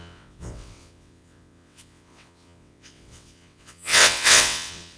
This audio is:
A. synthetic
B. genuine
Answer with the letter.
A